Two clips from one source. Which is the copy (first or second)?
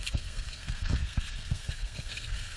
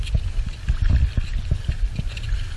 first